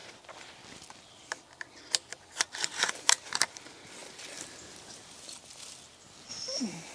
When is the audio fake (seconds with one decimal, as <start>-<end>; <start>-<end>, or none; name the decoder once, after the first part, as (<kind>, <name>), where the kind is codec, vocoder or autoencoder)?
none